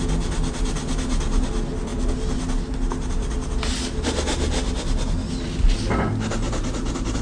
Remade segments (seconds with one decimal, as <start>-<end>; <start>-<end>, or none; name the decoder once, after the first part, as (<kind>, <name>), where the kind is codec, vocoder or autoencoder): none